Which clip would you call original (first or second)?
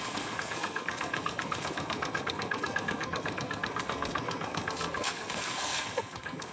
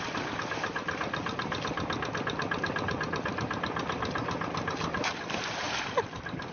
second